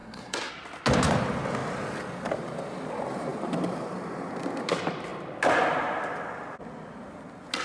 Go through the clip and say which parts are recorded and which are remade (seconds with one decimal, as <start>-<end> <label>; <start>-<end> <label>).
0.0-0.5 remade; 0.5-7.6 recorded